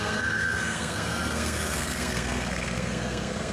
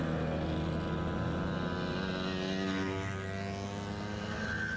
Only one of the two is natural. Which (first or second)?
second